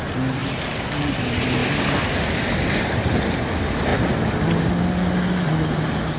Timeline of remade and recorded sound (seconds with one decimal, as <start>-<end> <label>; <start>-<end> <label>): 0.0-6.2 recorded